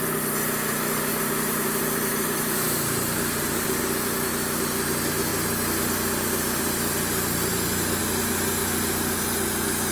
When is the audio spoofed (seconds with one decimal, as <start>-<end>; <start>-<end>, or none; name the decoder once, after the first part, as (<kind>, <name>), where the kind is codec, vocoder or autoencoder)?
1.1-3.8 (vocoder, BigVGAN v2); 8.6-9.2